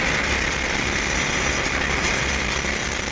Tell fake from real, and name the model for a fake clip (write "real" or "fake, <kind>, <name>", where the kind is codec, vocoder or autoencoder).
real